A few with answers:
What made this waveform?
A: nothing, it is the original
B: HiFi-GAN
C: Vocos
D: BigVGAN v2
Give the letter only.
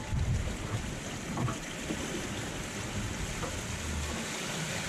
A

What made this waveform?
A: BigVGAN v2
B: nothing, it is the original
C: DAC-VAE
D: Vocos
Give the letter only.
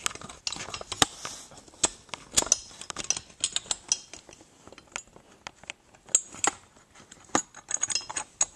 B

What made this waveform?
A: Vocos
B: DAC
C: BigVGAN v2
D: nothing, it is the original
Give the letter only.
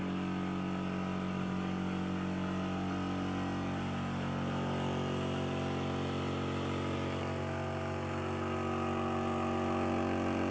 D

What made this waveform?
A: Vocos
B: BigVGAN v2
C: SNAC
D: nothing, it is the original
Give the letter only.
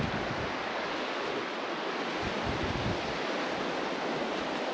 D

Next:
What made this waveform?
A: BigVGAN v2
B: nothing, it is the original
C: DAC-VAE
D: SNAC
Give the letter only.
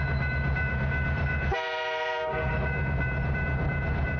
A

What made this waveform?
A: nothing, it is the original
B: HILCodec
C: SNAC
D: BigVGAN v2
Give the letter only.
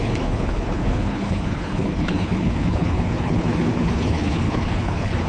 B